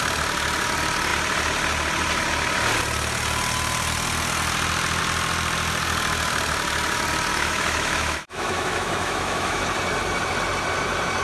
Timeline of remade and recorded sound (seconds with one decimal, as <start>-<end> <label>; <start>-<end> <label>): 0.0-7.3 recorded; 7.3-9.6 remade; 9.6-11.2 recorded